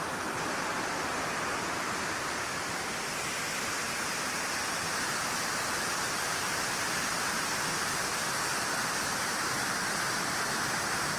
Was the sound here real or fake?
real